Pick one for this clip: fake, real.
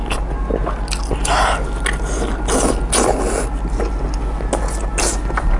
real